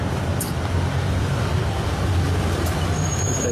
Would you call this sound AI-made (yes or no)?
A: yes